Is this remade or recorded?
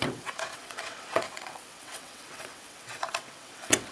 remade